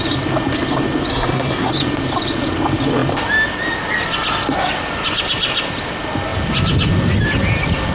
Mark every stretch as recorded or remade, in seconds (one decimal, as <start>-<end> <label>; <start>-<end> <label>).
0.0-1.1 recorded; 1.1-1.7 remade; 1.7-7.9 recorded